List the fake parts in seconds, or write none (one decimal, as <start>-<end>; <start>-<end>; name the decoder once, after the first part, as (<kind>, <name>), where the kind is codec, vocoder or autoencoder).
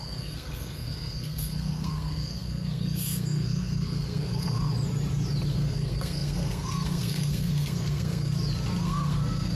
0.0-4.7 (codec, SNAC); 5.5-8.3; 8.8-9.5